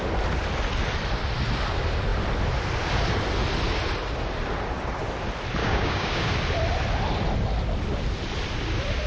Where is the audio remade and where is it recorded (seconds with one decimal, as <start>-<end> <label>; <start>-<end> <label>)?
0.0-5.6 recorded; 5.6-6.3 remade; 6.3-9.1 recorded